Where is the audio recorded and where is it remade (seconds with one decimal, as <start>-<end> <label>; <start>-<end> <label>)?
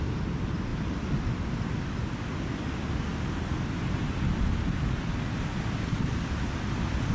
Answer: 0.0-7.1 recorded